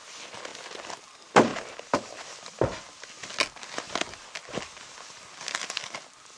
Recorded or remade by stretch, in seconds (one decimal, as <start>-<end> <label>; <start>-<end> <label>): 0.0-6.4 recorded